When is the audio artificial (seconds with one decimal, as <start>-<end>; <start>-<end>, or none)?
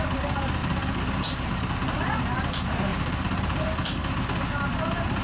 0.6-2.5; 2.9-3.6